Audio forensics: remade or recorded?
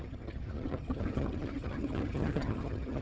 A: remade